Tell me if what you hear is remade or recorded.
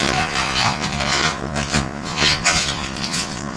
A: remade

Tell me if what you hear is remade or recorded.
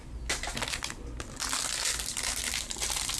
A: recorded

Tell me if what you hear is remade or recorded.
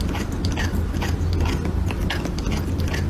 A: recorded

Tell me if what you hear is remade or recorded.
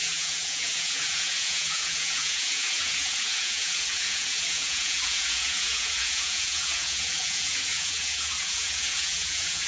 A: remade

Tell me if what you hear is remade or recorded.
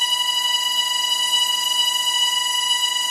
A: remade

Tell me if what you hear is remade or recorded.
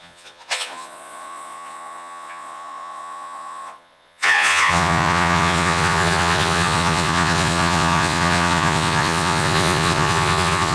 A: remade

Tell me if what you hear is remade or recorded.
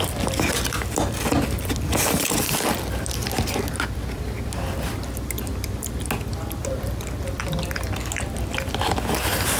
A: recorded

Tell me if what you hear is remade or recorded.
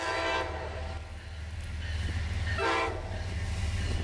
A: recorded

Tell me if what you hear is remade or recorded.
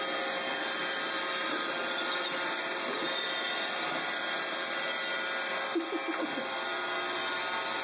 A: recorded